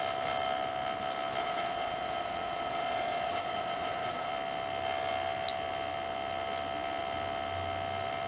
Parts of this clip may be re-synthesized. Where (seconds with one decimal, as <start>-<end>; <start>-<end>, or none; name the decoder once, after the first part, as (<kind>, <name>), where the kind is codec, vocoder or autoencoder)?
1.4-4.3 (vocoder, Vocos)